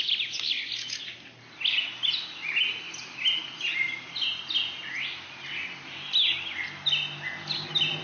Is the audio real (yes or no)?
yes